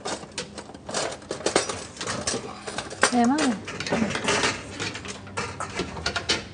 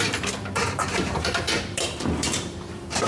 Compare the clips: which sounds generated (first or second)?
second